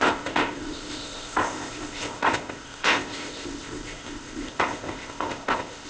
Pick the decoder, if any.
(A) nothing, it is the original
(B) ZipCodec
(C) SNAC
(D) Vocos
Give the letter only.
B